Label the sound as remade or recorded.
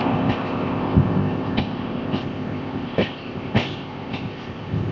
remade